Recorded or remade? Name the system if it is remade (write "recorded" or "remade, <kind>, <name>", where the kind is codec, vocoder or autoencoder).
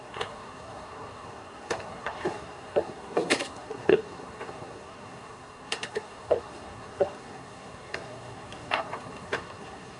remade, codec, SNAC